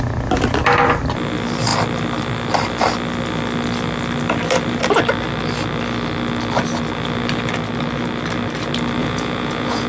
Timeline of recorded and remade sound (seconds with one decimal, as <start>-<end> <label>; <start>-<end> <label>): 0.0-9.0 recorded; 9.0-9.9 remade